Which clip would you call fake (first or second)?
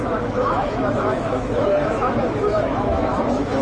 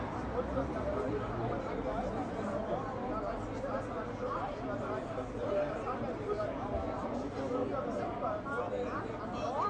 first